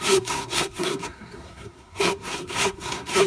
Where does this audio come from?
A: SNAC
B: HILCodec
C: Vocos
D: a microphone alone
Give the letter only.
A